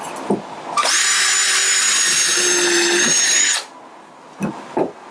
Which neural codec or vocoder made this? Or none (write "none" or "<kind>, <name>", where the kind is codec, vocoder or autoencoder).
none